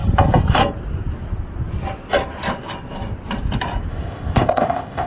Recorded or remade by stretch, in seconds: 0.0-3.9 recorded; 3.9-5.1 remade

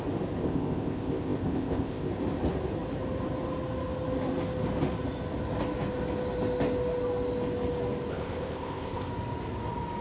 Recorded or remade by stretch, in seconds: 0.0-0.4 recorded; 0.4-2.1 remade; 2.1-8.1 recorded; 8.1-9.1 remade; 9.1-10.0 recorded

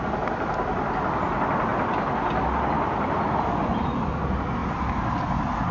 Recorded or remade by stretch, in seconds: 0.0-5.7 recorded

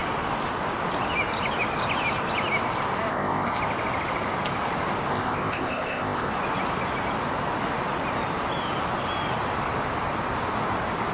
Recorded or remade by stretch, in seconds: 0.0-3.1 recorded; 3.1-3.6 remade; 3.6-5.1 recorded; 5.1-6.3 remade; 6.3-11.1 recorded

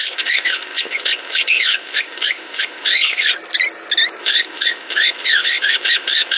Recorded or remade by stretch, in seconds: 0.0-3.3 remade; 3.3-4.2 recorded; 4.2-6.4 remade

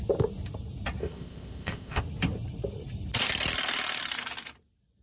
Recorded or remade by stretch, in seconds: 0.0-1.0 recorded; 1.0-2.0 remade; 2.0-5.0 recorded